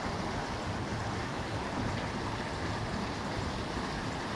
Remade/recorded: recorded